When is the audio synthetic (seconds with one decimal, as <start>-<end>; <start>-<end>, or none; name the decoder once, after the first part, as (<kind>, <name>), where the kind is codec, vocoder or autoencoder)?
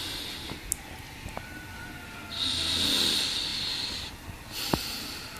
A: 3.5-5.4 (vocoder, BigVGAN v2)